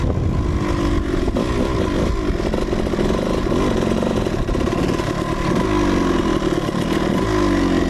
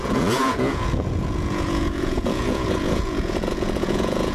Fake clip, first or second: second